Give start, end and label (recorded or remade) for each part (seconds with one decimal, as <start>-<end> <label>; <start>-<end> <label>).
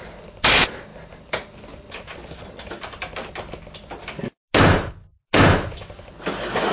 0.0-6.7 recorded